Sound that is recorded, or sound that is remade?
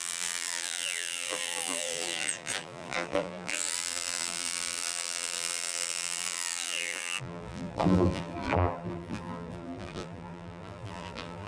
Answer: remade